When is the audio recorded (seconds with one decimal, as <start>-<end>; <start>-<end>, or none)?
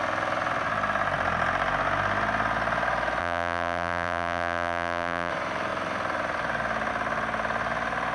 0.0-3.2; 5.3-8.1